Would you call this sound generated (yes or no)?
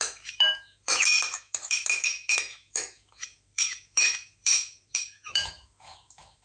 yes